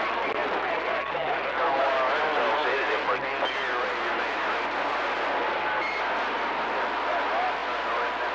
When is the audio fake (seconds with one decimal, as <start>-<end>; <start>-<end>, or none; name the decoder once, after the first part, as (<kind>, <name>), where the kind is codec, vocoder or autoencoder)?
none

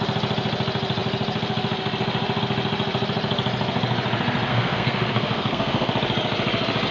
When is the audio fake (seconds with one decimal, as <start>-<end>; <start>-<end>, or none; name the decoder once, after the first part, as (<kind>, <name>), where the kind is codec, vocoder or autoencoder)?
4.5-5.9 (codec, SNAC)

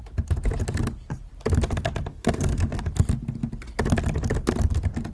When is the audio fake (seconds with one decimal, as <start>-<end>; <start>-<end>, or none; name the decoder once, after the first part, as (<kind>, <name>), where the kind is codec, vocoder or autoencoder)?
2.1-2.8 (codec, SNAC)